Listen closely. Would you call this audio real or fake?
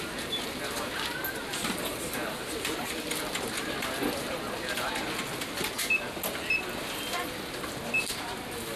real